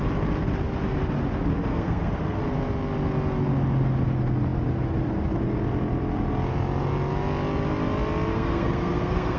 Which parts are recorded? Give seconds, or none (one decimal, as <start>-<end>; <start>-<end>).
0.0-1.7; 2.4-8.3